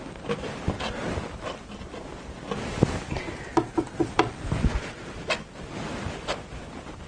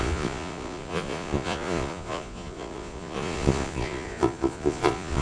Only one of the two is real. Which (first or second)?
first